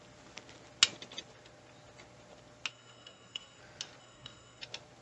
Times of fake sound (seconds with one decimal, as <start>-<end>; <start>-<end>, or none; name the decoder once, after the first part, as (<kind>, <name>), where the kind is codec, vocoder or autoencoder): 2.7-3.6 (codec, SNAC); 4.0-4.6